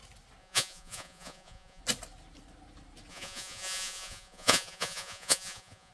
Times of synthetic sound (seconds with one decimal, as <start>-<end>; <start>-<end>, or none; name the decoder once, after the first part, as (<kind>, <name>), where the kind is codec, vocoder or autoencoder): 0.4-1.8 (vocoder, Vocos); 3.1-5.9